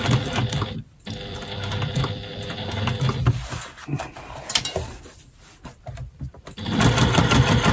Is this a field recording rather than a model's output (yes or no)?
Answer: no